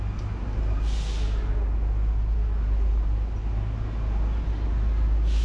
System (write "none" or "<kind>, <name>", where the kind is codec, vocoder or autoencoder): none